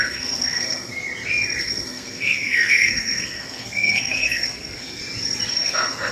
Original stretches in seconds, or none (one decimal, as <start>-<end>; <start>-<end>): 0.9-1.6; 5.0-5.5